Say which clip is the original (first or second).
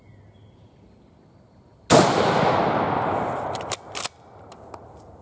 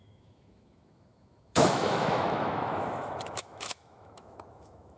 first